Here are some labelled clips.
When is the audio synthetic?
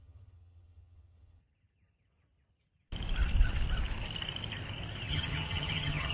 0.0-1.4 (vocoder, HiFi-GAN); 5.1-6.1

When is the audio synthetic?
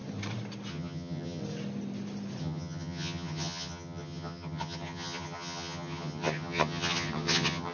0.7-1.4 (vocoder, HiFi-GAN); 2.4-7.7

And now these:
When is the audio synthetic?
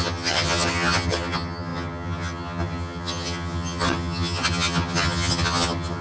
0.0-6.0 (vocoder, HiFi-GAN)